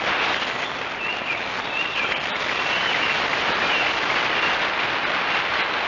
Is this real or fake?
real